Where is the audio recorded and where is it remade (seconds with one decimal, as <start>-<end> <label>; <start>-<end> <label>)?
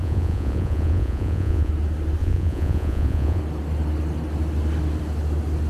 0.0-1.7 remade; 1.7-2.2 recorded; 2.2-3.4 remade; 3.4-5.7 recorded